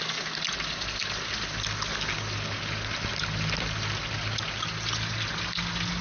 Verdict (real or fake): real